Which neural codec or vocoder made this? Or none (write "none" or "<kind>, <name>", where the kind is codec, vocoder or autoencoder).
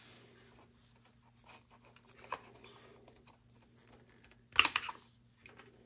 none